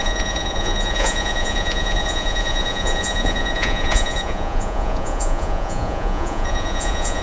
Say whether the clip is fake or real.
fake